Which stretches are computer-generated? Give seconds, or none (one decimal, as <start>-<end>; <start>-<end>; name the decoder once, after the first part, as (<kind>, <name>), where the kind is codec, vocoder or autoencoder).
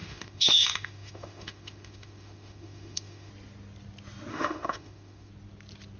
0.0-3.3 (autoencoder, DAC-VAE); 4.3-5.3